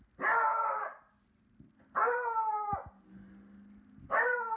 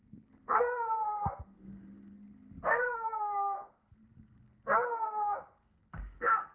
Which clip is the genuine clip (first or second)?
first